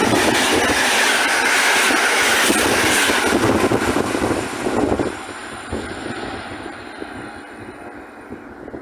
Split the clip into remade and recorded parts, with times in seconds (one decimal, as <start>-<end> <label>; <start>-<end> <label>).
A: 0.0-5.4 recorded; 5.4-6.2 remade; 6.2-8.8 recorded